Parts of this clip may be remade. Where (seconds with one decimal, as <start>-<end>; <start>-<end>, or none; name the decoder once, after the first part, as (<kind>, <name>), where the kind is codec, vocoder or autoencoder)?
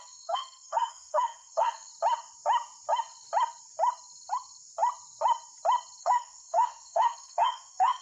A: 0.0-1.9 (codec, SNAC); 6.0-8.0